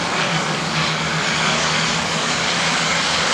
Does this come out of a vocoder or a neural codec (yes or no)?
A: yes